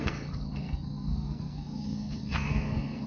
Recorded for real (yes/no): no